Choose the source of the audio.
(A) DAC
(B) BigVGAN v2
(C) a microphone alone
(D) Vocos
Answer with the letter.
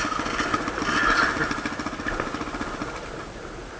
C